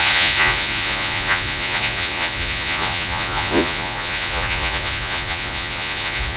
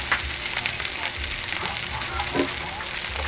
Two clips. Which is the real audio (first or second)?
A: second